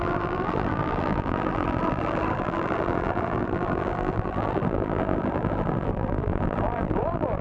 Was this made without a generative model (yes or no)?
no